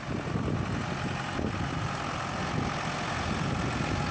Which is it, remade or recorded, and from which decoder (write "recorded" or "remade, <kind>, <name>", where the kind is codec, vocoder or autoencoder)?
recorded